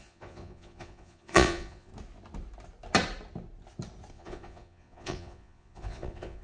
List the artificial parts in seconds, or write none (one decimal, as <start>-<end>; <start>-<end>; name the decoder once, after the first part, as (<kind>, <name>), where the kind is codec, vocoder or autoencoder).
0.0-1.9 (vocoder, Vocos); 4.1-6.4